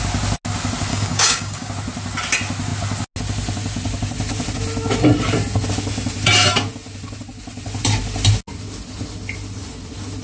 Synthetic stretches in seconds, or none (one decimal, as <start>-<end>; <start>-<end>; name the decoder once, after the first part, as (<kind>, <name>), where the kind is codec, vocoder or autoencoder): 0.9-1.7 (codec, DAC)